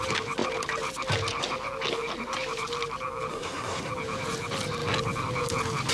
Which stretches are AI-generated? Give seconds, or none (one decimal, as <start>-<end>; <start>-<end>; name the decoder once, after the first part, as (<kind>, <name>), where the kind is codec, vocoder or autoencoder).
3.3-3.9 (codec, SNAC)